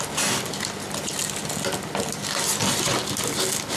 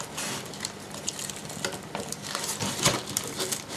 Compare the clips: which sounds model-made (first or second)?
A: second